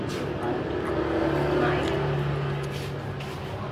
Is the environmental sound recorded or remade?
recorded